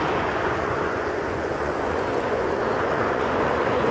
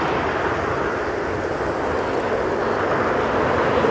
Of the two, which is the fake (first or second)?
first